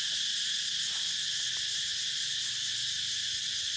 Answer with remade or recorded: recorded